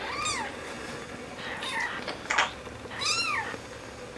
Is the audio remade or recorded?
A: recorded